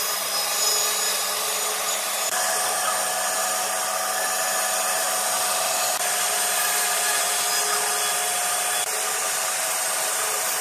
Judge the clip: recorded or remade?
recorded